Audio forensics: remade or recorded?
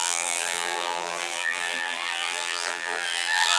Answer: remade